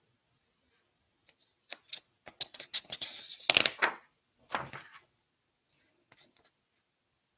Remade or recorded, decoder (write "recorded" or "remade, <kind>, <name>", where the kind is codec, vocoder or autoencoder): recorded